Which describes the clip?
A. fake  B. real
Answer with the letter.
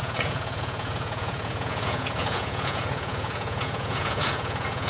A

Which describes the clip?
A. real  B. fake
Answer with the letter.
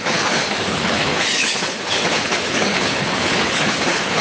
B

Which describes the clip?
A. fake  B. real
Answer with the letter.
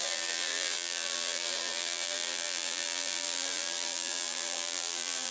A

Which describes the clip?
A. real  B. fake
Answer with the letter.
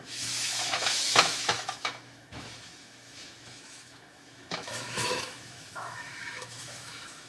B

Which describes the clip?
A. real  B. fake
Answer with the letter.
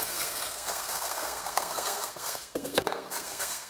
B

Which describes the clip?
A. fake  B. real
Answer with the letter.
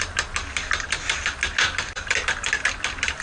B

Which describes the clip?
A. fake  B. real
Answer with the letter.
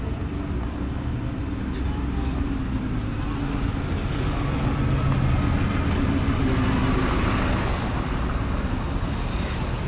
B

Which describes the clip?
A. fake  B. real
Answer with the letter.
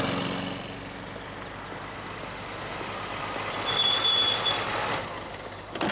B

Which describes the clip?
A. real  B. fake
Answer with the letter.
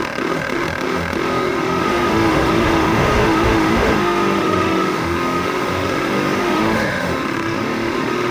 B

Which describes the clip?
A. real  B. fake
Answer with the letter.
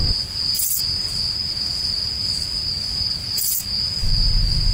A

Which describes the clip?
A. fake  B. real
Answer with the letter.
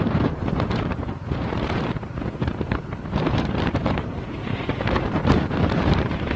A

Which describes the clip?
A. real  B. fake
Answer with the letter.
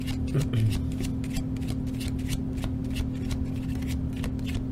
A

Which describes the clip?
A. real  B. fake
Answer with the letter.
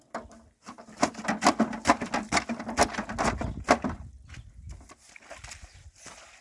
A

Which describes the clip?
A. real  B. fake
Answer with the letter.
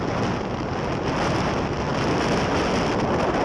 A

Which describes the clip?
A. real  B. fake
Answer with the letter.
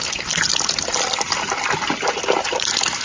A